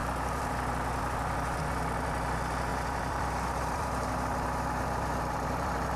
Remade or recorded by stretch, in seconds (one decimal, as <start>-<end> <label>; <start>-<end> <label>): 0.0-0.5 remade; 0.5-2.7 recorded; 2.7-6.0 remade